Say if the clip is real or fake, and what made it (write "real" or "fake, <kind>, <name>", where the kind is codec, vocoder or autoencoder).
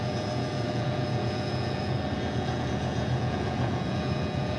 fake, vocoder, Vocos